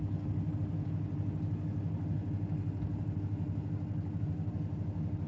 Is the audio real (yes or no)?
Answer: yes